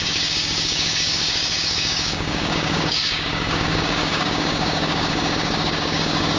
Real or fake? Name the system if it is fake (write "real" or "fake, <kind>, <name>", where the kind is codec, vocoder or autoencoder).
fake, codec, DAC